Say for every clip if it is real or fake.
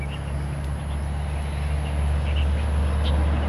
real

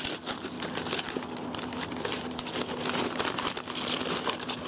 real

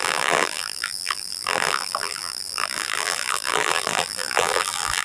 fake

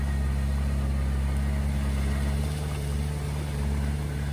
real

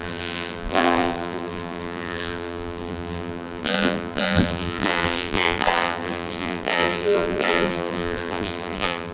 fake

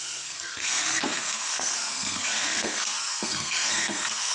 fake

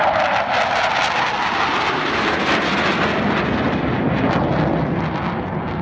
real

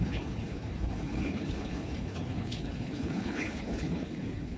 fake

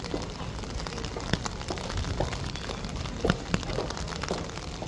real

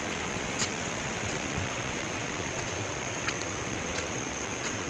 fake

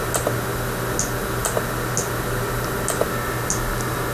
real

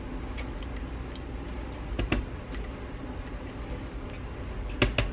real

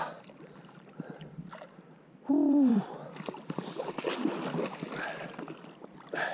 real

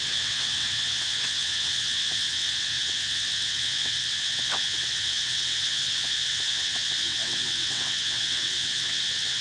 fake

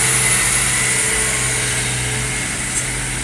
real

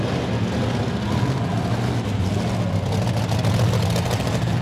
real